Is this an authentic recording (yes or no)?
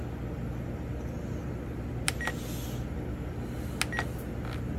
yes